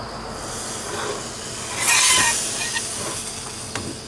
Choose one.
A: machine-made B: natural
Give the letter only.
B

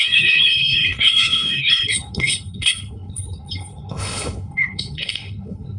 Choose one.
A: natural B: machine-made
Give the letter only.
B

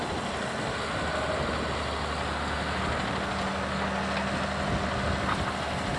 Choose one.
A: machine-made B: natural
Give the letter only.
B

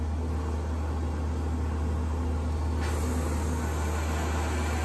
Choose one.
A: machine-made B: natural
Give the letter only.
B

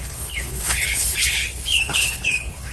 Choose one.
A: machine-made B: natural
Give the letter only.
A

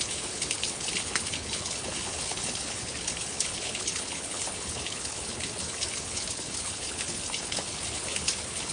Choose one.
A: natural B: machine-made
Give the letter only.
B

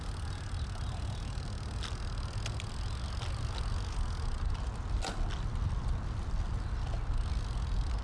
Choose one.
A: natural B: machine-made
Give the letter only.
A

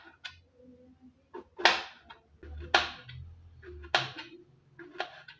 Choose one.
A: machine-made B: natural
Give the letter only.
B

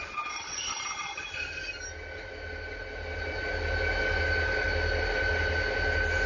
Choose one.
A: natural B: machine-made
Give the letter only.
A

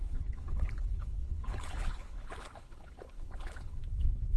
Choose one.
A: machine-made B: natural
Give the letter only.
A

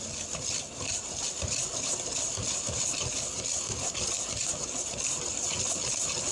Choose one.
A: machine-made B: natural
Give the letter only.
B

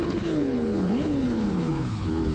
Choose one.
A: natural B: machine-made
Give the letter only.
B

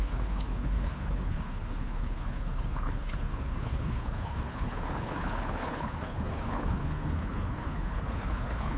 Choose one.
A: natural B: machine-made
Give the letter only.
B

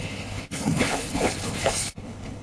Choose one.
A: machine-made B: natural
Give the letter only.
A